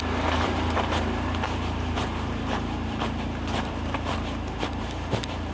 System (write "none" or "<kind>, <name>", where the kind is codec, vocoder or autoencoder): vocoder, BigVGAN v2